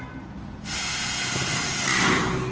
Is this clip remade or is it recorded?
recorded